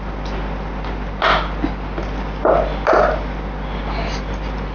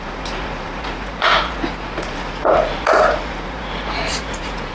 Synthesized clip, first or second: second